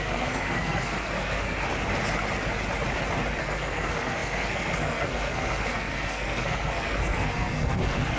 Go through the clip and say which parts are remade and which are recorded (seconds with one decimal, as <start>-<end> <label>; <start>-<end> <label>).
0.0-1.7 remade; 1.7-3.4 recorded; 3.4-8.2 remade